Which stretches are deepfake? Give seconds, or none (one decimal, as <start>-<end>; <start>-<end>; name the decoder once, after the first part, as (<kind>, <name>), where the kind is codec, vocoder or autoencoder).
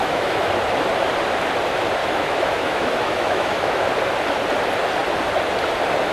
0.0-0.5 (autoencoder, DAC-VAE); 2.0-3.9